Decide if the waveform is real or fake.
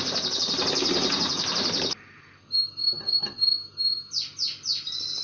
real